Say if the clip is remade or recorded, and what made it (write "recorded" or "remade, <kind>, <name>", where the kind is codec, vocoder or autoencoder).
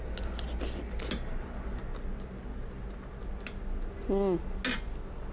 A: recorded